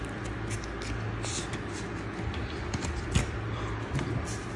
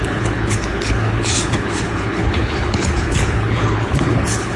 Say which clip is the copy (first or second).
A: second